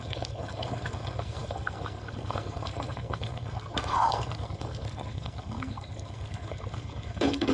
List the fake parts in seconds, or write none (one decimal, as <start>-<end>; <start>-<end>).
0.0-7.5